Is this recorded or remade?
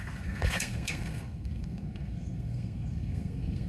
remade